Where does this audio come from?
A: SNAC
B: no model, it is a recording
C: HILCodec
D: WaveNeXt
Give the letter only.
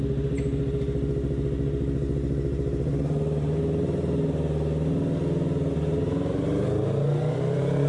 B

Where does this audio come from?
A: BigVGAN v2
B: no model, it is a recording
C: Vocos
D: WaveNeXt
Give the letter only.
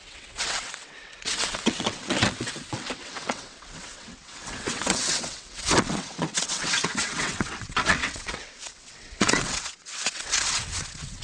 D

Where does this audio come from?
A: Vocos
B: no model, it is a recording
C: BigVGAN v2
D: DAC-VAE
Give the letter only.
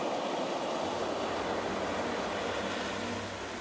B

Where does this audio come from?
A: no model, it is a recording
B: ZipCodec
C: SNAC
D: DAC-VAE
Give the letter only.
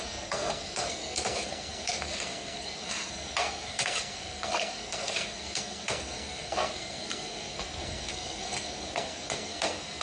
C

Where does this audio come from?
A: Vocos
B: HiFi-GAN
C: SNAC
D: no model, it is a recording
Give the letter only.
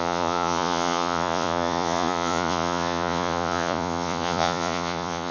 A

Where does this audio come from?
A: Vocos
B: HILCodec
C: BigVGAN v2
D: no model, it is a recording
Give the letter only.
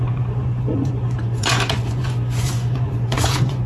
A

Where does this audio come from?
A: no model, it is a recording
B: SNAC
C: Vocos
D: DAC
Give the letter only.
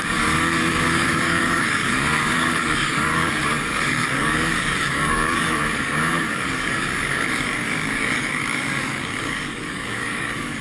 D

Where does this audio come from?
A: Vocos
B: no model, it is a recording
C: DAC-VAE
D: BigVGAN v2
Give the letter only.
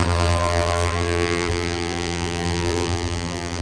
D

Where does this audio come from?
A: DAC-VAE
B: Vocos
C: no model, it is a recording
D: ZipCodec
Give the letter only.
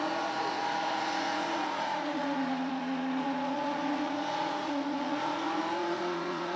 B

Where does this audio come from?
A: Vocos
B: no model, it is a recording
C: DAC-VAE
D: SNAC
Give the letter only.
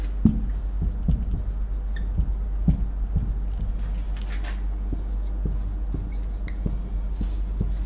B